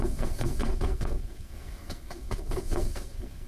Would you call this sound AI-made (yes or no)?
yes